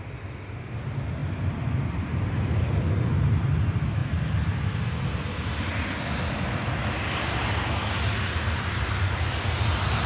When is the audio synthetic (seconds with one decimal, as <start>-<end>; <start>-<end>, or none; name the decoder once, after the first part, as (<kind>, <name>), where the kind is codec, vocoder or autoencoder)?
1.2-2.8 (vocoder, BigVGAN v2)